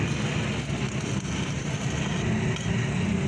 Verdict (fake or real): real